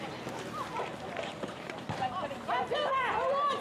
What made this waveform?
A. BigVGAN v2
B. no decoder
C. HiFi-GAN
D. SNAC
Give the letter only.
A